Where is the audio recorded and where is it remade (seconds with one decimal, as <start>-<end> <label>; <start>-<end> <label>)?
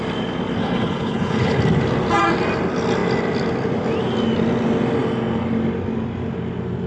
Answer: 0.0-0.6 recorded; 0.6-1.6 remade; 1.6-6.9 recorded